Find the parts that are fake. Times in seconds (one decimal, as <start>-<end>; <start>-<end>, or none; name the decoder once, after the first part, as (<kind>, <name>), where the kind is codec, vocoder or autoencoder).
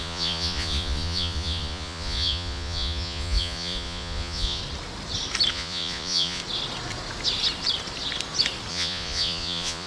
0.0-4.6 (vocoder, Vocos); 5.5-6.4; 8.7-9.9